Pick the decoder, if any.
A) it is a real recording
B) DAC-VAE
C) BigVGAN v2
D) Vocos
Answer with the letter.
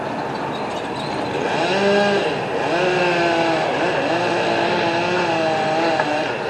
A